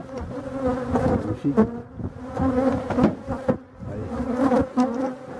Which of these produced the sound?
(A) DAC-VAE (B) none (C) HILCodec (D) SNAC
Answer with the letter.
B